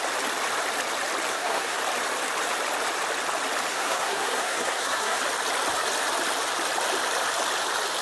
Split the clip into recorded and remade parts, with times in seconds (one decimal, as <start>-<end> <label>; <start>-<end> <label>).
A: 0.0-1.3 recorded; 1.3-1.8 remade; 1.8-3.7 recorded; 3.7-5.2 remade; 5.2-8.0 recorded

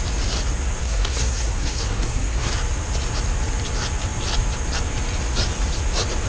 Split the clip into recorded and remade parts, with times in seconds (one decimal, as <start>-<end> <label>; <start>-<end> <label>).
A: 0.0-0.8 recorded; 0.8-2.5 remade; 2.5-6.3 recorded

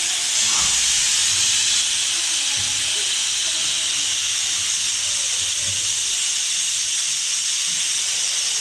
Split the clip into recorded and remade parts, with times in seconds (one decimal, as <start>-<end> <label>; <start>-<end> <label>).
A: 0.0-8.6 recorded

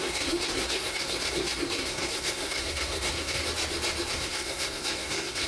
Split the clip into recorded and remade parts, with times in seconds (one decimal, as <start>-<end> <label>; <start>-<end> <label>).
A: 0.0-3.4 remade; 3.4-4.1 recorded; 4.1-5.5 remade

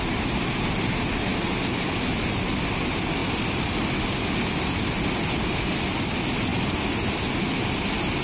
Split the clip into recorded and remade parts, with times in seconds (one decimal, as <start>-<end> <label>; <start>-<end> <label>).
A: 0.0-8.2 recorded